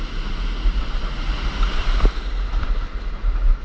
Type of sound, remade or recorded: recorded